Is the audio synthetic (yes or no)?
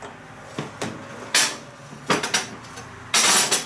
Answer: no